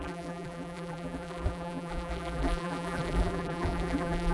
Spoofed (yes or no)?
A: yes